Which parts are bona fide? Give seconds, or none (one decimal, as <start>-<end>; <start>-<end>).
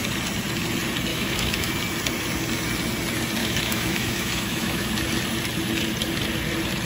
0.0-1.1; 1.7-3.4; 4.9-6.9